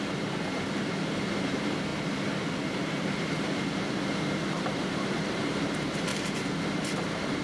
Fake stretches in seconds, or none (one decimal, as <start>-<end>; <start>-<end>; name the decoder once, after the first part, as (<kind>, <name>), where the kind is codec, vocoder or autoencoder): 0.0-1.9 (vocoder, BigVGAN v2); 4.5-7.4